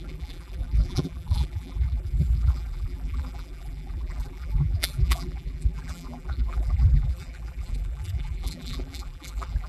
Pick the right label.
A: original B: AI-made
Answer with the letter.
B